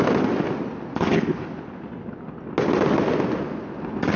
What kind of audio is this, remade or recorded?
recorded